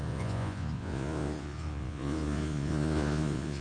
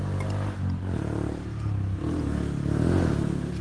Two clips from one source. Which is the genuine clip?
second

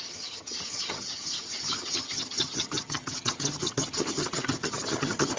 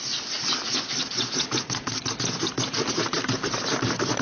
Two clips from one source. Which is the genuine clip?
second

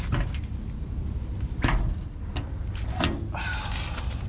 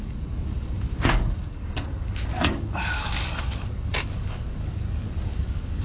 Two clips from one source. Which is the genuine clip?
first